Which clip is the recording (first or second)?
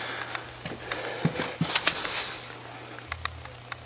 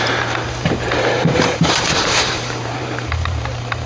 first